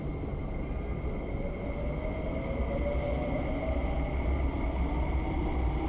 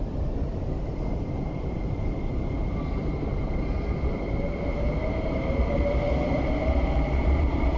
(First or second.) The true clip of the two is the first